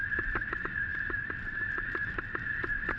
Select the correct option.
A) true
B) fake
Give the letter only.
A